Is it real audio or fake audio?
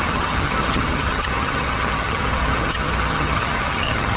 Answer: fake